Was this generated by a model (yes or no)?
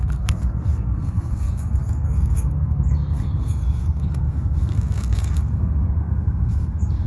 yes